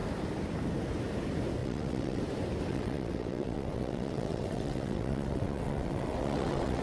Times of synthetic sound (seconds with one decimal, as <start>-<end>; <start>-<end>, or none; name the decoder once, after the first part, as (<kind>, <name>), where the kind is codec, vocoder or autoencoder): 1.6-2.2 (vocoder, WaveNeXt); 2.7-6.8